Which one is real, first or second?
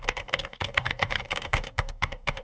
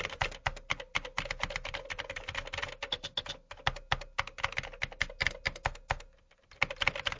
second